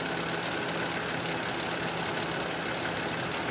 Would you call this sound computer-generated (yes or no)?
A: no